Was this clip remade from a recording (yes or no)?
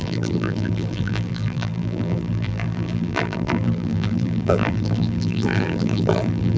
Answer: yes